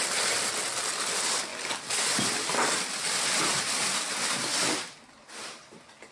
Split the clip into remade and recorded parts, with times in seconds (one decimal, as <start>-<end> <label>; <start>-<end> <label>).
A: 0.0-6.1 recorded